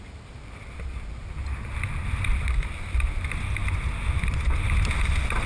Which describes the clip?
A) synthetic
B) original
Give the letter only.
B